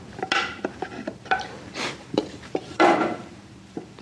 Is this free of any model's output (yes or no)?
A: no